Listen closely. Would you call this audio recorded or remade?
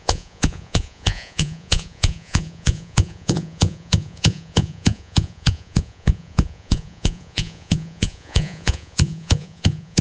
remade